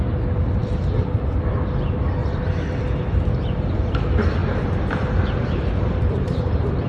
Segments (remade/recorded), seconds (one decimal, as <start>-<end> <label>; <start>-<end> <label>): 0.0-2.2 recorded; 2.2-2.8 remade; 2.8-4.4 recorded; 4.4-6.9 remade

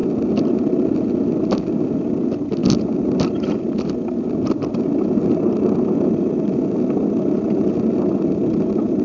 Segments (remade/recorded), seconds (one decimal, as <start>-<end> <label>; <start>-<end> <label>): 0.0-9.0 recorded

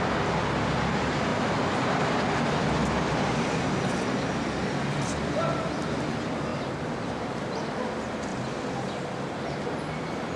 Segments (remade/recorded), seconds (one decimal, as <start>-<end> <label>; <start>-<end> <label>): 0.0-1.3 recorded; 1.3-2.1 remade; 2.1-6.5 recorded; 6.5-7.3 remade; 7.3-10.4 recorded

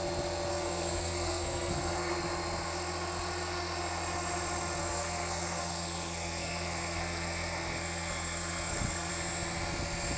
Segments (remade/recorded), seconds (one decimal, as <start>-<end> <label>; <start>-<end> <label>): 0.0-0.5 recorded; 0.5-2.1 remade; 2.1-4.8 recorded; 4.8-9.1 remade; 9.1-10.2 recorded

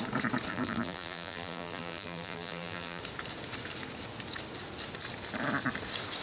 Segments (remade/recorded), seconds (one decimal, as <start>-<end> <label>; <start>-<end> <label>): 0.0-0.5 recorded; 0.5-3.0 remade; 3.0-6.2 recorded

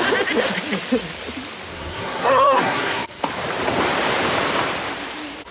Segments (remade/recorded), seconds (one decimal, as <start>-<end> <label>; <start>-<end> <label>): 0.0-1.7 recorded; 1.7-3.2 remade; 3.2-5.5 recorded